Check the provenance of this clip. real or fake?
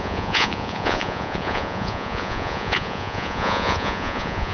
fake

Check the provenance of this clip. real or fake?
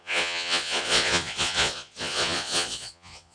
fake